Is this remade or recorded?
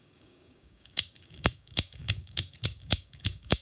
remade